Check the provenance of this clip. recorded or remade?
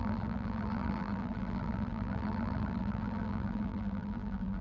remade